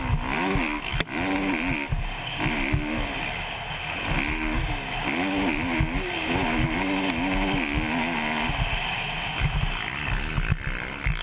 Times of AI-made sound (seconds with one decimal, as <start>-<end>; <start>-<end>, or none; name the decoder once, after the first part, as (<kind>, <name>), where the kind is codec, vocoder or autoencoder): none